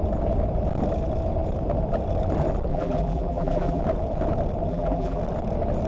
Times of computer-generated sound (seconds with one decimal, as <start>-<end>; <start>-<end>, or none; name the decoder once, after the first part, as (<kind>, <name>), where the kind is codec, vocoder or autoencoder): 2.7-3.8 (vocoder, BigVGAN v2); 4.7-5.2